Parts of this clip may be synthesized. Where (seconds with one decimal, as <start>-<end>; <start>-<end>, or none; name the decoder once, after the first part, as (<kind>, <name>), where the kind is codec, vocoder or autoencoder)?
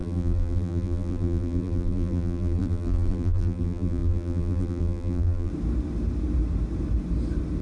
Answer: 0.0-5.5 (vocoder, BigVGAN v2)